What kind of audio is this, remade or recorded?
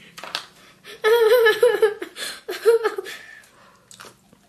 recorded